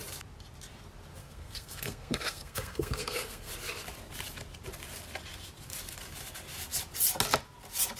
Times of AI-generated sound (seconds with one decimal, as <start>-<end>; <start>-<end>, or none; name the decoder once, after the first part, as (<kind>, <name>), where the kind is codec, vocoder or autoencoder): 1.2-3.5 (codec, SNAC)